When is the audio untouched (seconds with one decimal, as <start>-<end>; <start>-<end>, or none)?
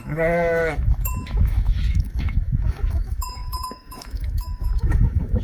none